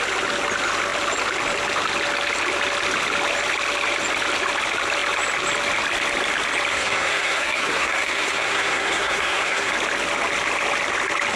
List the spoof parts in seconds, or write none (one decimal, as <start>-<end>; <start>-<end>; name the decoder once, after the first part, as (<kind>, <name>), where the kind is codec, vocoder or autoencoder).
6.7-9.7 (codec, SNAC)